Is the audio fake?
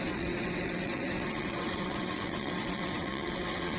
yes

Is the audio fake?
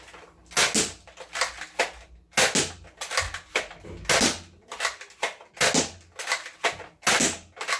no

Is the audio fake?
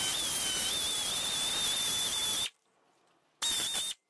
no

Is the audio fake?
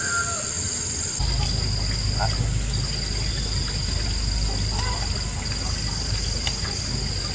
no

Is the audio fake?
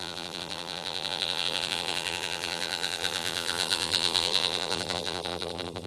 yes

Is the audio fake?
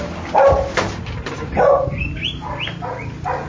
no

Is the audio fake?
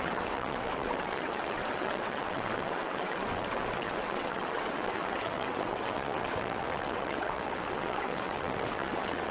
yes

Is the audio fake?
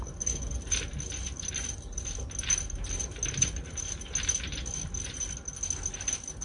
no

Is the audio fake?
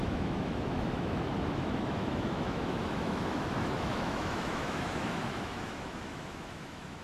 yes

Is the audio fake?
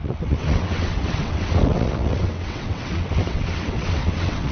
yes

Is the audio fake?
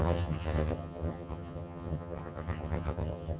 yes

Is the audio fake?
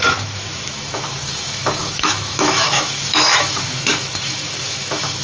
yes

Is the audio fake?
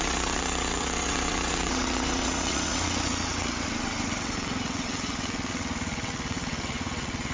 yes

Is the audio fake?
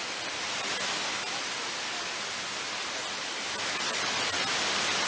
no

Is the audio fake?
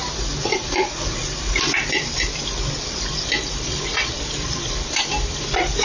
yes